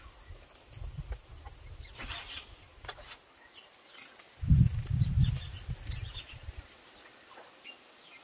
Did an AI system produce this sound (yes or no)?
no